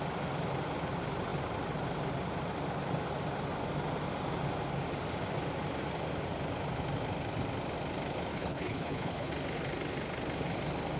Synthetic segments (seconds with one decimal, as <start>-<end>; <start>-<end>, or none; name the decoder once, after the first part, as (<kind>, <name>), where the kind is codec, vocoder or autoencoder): 8.3-9.3 (codec, HILCodec)